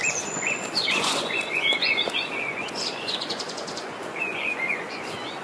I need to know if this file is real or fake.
fake